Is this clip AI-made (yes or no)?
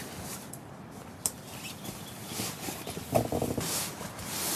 no